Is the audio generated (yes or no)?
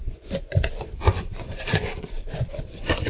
yes